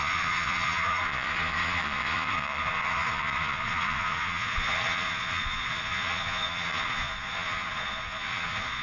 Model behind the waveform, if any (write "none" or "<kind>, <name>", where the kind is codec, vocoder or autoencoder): vocoder, Vocos